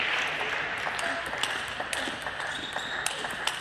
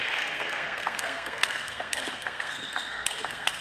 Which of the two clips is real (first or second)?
first